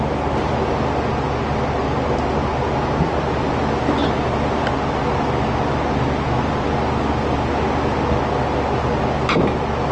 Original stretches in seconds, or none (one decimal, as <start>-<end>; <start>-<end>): 0.0-9.9